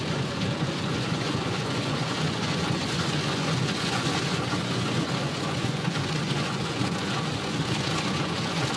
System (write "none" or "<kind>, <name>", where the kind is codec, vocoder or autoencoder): vocoder, Vocos